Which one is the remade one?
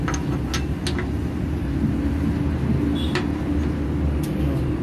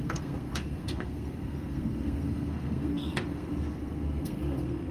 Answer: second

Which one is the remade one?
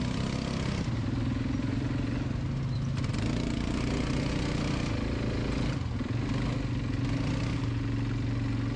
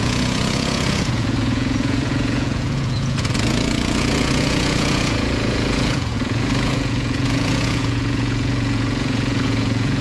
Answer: second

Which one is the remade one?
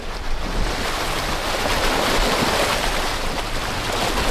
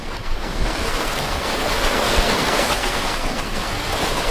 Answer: second